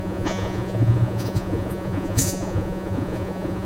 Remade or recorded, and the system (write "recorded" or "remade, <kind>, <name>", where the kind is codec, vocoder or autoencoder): remade, vocoder, Vocos